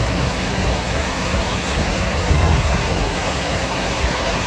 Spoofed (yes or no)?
yes